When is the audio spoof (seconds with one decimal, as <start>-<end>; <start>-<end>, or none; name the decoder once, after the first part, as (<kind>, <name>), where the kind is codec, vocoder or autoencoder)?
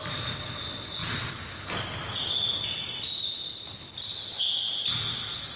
none